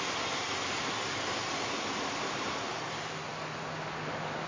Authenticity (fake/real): real